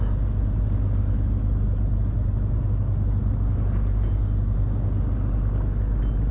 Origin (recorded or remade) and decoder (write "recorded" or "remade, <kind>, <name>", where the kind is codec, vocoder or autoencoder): recorded